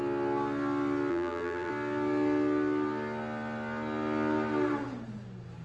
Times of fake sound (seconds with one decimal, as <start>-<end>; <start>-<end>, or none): 1.1-1.7